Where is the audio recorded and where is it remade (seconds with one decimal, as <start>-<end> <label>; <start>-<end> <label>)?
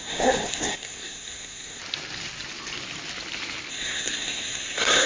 0.0-1.8 remade; 1.8-3.7 recorded; 3.7-5.1 remade